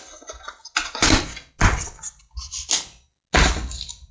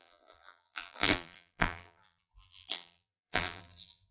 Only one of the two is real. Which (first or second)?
first